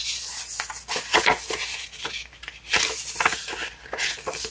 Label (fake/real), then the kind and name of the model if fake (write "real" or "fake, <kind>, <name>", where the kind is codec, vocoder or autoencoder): real